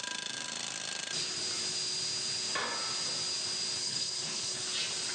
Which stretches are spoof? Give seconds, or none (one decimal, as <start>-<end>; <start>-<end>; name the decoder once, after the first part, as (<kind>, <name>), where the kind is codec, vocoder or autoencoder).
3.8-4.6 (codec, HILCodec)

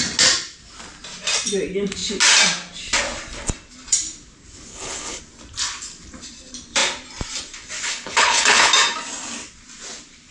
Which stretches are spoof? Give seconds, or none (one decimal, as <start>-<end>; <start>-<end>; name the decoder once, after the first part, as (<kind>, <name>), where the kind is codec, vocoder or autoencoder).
4.7-5.2 (codec, HILCodec); 7.9-8.7

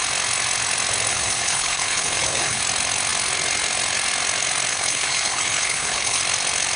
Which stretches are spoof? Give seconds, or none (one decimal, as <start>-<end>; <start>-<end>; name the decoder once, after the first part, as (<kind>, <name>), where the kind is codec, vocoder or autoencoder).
1.1-2.6 (codec, HILCodec); 4.7-6.2